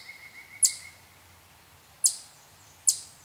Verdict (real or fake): real